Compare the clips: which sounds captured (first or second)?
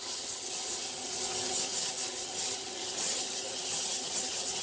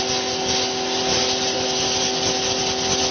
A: second